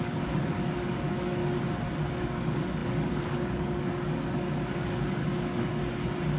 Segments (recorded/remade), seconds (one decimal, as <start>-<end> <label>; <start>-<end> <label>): 0.0-1.4 remade; 1.4-2.2 recorded; 2.2-5.8 remade; 5.8-6.4 recorded